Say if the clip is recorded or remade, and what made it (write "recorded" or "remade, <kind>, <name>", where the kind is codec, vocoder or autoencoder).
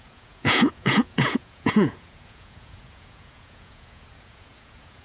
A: remade, vocoder, Vocos